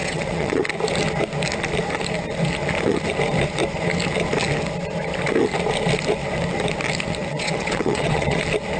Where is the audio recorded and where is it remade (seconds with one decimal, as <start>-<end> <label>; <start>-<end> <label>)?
0.0-0.6 remade; 0.6-7.3 recorded; 7.3-8.4 remade; 8.4-8.8 recorded